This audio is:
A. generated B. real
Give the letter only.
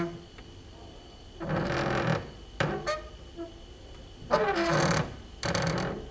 B